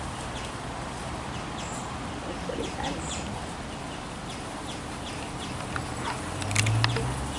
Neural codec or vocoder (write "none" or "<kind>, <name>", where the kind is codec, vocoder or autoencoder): none